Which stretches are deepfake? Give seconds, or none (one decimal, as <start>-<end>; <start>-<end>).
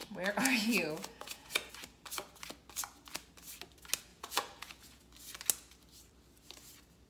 0.0-1.7; 4.1-5.1